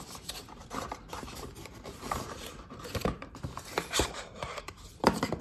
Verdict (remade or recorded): remade